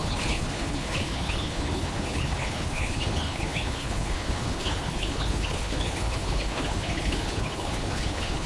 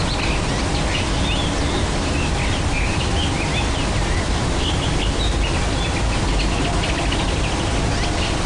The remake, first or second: first